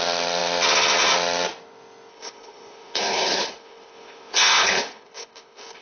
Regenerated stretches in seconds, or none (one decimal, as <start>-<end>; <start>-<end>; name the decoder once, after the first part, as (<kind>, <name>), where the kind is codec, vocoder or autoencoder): 2.1-5.8 (codec, HILCodec)